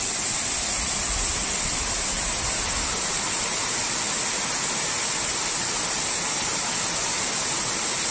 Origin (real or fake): real